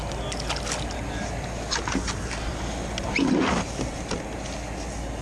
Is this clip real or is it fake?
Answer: real